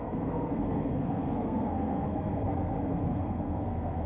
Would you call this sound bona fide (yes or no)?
no